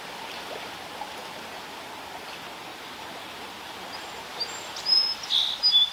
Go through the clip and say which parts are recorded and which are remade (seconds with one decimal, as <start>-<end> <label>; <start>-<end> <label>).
0.0-2.7 recorded; 2.7-3.6 remade; 3.6-4.3 recorded; 4.3-5.4 remade; 5.4-5.9 recorded